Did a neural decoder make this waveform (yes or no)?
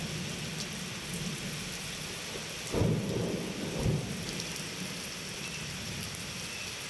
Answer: no